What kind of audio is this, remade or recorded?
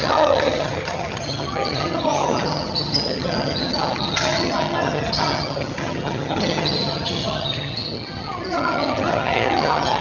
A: remade